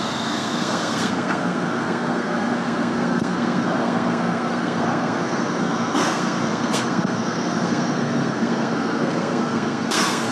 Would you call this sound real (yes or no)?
no